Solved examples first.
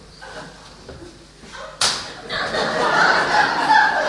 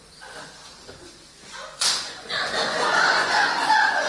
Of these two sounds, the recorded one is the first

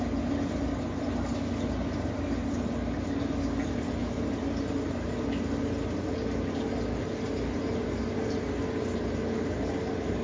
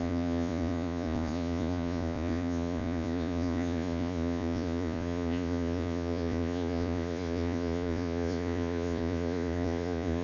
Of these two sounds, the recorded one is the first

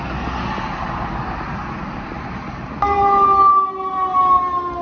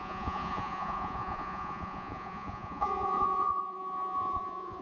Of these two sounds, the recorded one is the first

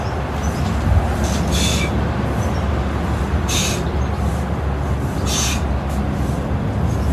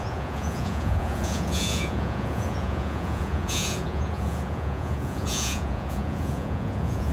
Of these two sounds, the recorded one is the first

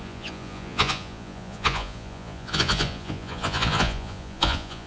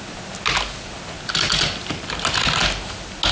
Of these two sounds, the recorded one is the second